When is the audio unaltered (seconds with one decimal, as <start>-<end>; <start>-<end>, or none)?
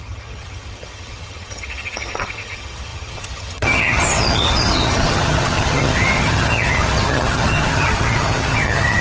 none